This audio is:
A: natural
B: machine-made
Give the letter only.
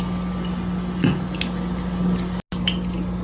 A